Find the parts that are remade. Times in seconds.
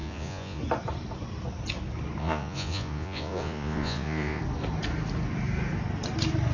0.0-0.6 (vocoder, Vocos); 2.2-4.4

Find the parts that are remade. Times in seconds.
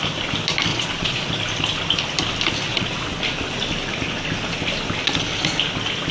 0.7-1.3 (vocoder, Vocos); 2.7-3.2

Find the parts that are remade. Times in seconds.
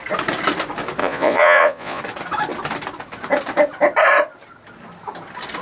1.0-2.0 (vocoder, Vocos)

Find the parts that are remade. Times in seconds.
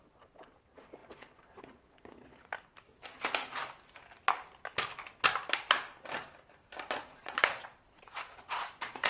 0.0-2.5 (vocoder, Vocos); 7.0-9.1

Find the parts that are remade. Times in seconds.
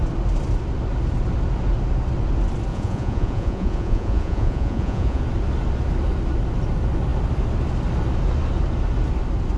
2.7-5.2 (vocoder, Vocos)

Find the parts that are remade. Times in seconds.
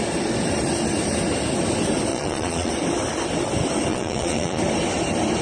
2.1-2.7 (vocoder, Vocos); 3.9-4.6